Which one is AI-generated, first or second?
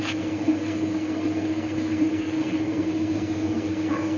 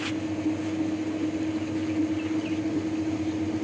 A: first